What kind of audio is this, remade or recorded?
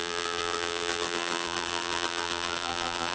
remade